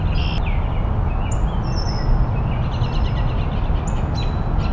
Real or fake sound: real